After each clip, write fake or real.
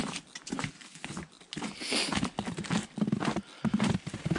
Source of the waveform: real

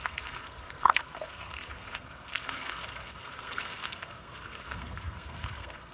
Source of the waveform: fake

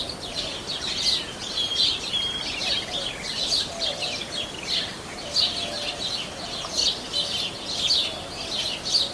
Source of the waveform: real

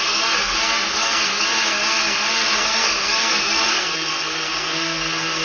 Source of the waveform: fake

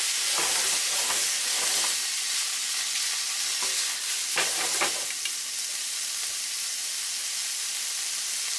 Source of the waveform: real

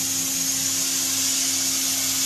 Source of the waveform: real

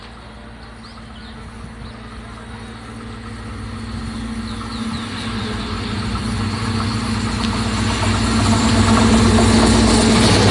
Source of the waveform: real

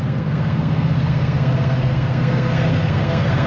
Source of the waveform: fake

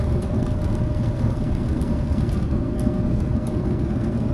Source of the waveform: fake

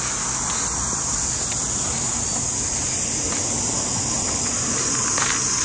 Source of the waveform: real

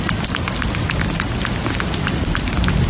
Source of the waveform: real